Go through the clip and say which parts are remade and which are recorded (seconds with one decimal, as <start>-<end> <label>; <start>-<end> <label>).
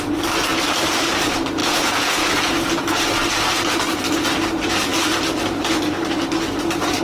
0.0-1.6 recorded; 1.6-2.3 remade; 2.3-7.0 recorded